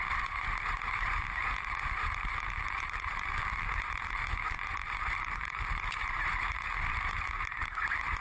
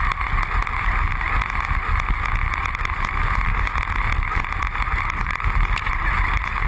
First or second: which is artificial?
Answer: first